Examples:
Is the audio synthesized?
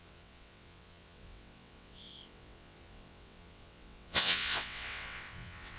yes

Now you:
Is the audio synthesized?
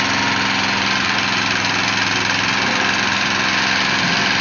no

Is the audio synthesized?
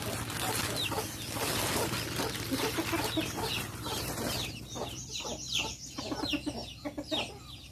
no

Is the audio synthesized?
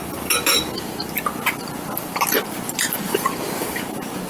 no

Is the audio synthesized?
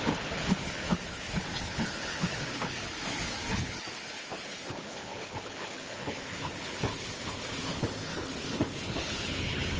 yes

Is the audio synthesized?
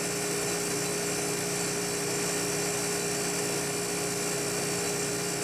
no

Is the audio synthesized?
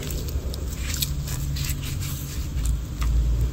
no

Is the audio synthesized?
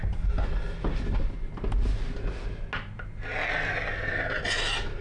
no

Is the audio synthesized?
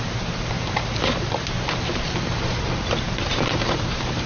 yes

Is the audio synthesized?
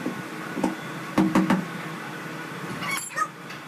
no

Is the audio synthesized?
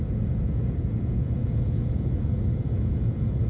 yes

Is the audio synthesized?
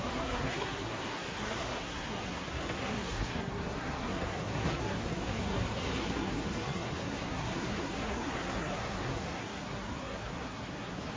yes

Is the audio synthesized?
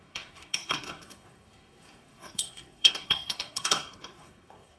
yes